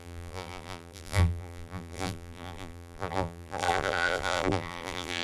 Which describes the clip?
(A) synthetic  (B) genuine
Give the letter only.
A